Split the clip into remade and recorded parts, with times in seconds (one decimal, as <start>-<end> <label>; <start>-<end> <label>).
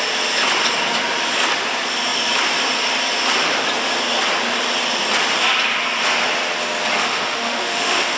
0.0-6.9 recorded; 6.9-8.2 remade